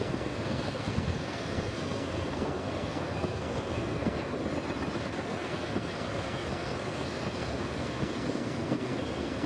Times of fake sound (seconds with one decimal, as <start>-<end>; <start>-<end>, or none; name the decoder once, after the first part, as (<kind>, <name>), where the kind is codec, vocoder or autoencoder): 0.0-4.3 (codec, SNAC); 5.0-9.5